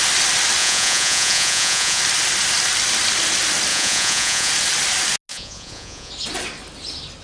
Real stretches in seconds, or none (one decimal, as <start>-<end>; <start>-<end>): 0.0-0.6; 2.0-3.7; 4.5-5.3; 6.1-7.2